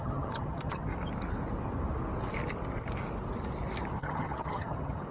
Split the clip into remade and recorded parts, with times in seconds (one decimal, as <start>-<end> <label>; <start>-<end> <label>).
0.0-0.9 remade; 0.9-4.0 recorded; 4.0-5.1 remade